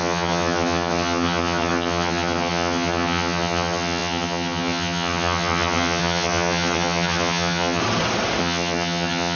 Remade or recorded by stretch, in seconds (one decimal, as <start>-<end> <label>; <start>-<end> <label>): 0.0-7.8 remade; 7.8-8.4 recorded; 8.4-9.4 remade